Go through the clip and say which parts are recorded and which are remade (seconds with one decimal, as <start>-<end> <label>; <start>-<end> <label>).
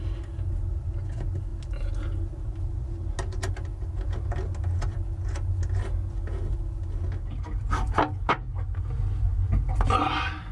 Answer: 0.0-10.5 recorded